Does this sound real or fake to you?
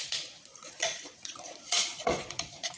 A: fake